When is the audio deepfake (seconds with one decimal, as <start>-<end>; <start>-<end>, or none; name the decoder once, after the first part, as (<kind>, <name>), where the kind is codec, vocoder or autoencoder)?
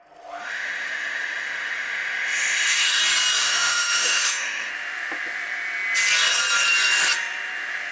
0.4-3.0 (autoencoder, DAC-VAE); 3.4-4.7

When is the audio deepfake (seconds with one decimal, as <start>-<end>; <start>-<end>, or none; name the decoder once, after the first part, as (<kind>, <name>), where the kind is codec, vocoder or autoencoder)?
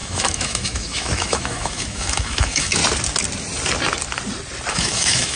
0.0-2.8 (autoencoder, DAC-VAE); 4.7-5.4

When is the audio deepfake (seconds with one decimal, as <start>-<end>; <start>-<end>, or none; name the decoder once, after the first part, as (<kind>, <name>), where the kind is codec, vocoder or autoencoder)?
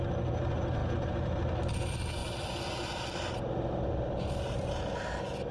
none